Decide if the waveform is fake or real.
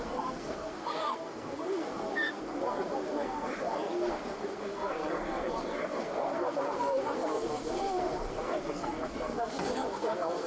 fake